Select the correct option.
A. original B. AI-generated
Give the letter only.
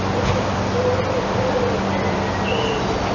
A